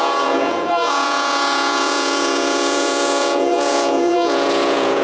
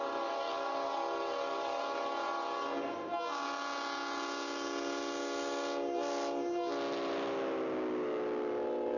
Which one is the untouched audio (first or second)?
second